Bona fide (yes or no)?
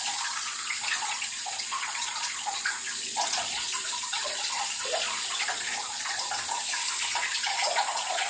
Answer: no